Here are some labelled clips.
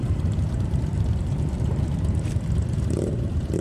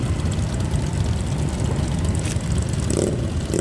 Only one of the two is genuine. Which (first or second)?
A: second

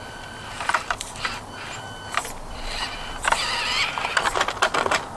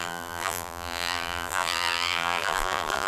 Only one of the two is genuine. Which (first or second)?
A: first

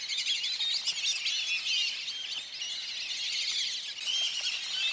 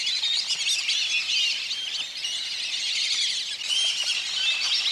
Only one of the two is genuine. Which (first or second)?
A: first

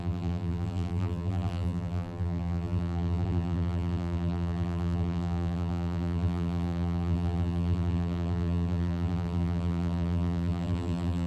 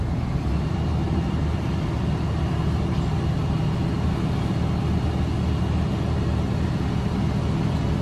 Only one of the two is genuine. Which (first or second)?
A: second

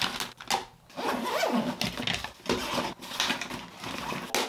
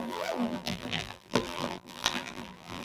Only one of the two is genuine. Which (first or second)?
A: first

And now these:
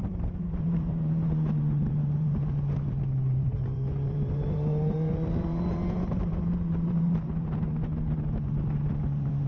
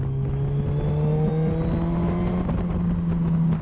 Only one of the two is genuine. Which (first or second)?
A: second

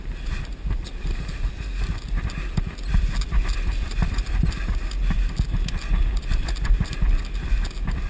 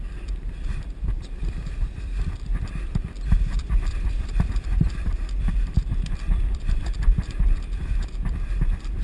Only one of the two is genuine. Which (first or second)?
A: first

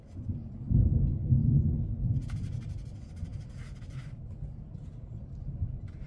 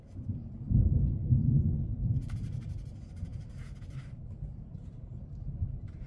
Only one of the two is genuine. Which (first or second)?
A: first